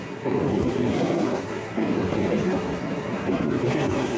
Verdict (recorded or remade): remade